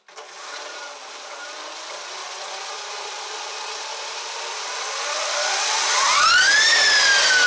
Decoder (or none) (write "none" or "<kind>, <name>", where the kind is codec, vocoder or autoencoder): none